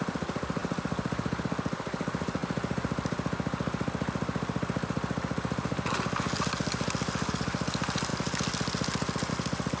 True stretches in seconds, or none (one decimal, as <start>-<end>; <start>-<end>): 0.0-9.8